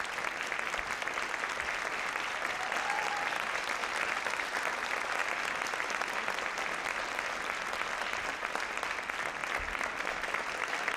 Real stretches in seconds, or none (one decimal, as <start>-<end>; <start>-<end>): 0.0-11.0